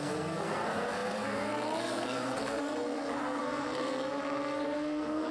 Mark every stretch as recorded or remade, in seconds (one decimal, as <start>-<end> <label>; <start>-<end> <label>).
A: 0.0-5.3 remade